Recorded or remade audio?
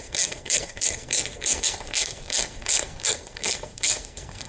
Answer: remade